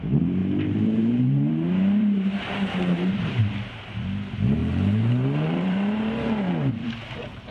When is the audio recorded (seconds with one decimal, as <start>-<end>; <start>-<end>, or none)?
0.0-0.4; 3.4-4.6; 6.7-7.5